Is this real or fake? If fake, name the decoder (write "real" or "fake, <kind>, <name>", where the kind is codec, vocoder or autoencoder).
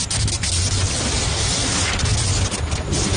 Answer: real